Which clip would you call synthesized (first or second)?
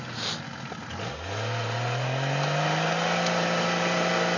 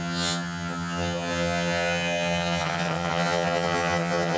second